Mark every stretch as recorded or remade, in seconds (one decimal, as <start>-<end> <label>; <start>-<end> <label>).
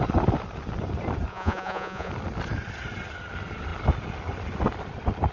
0.0-1.3 recorded; 1.3-2.1 remade; 2.1-5.3 recorded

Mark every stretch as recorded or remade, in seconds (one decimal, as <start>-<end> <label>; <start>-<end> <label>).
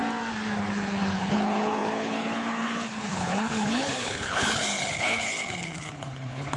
0.0-0.6 recorded; 0.6-6.6 remade